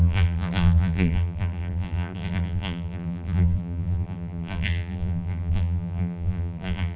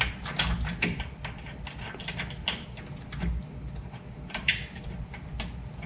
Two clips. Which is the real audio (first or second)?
second